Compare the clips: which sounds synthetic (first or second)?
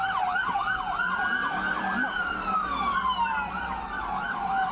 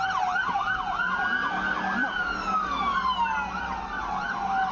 first